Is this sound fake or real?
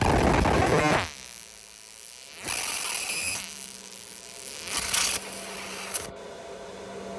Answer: real